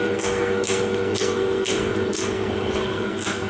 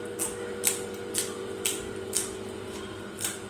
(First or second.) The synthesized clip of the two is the first